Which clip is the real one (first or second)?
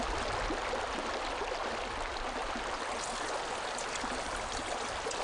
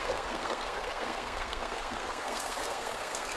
first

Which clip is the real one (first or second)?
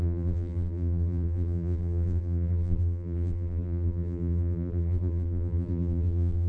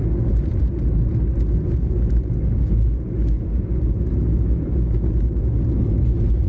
second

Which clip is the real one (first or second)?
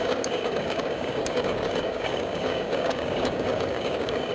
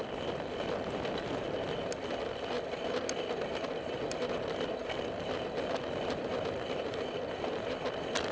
second